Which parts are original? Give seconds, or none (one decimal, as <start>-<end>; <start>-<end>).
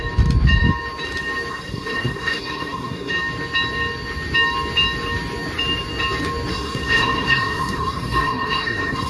0.0-1.5; 3.1-6.5